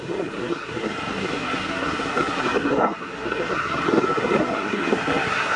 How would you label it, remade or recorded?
remade